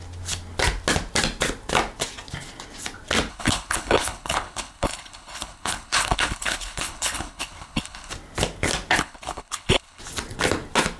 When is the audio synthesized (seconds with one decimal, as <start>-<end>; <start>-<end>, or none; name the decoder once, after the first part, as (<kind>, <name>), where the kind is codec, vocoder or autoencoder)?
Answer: 3.3-8.1 (codec, HILCodec); 9.0-10.0